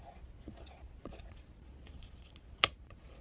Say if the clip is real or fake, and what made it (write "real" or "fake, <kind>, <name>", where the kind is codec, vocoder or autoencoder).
fake, vocoder, Vocos